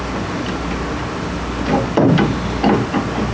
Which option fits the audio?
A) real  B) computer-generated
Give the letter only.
A